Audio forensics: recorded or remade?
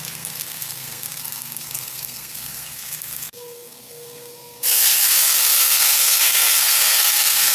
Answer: remade